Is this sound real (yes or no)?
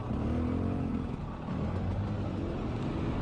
yes